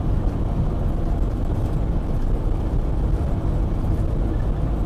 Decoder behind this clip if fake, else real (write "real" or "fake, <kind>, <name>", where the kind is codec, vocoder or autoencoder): real